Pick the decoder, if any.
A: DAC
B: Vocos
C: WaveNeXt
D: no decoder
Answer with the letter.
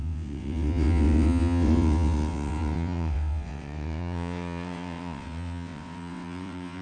C